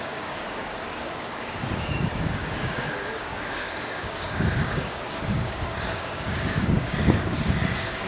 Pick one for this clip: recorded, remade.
remade